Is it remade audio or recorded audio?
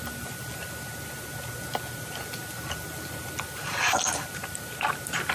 recorded